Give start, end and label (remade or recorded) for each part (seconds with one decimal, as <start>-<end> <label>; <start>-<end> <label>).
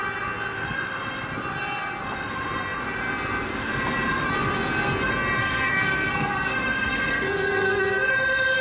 0.0-5.4 recorded; 5.4-8.1 remade; 8.1-8.6 recorded